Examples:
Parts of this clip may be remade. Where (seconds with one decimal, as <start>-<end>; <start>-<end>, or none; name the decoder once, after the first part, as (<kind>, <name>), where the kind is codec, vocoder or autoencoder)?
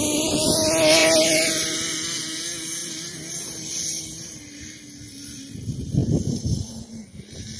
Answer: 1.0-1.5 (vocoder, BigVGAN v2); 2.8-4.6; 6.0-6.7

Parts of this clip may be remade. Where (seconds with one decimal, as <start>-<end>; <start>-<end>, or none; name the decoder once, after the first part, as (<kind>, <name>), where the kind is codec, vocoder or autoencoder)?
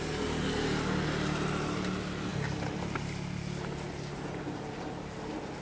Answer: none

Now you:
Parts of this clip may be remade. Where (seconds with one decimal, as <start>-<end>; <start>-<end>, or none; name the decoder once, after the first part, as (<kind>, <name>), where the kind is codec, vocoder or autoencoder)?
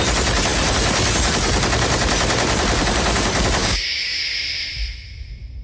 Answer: 3.6-4.2 (codec, DAC)